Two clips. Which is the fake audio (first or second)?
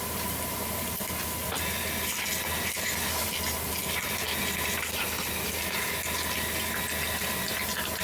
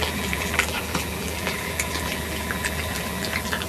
second